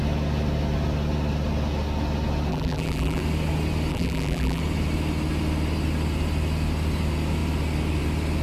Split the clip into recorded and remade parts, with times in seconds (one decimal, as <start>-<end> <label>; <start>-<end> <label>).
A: 0.0-2.5 recorded; 2.5-3.2 remade; 3.2-3.9 recorded; 3.9-4.6 remade; 4.6-8.4 recorded